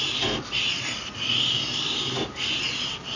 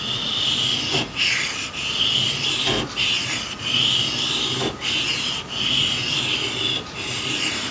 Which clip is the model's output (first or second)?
first